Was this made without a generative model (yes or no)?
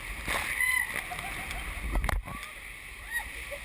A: yes